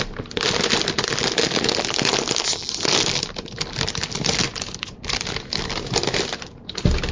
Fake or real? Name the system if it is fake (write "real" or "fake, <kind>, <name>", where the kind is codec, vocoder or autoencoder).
real